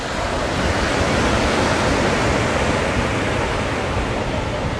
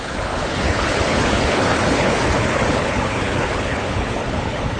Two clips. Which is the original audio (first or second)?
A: first